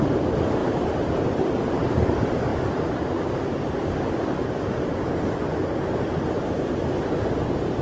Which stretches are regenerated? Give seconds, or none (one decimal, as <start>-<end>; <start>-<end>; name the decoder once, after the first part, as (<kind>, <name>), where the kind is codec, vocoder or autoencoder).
none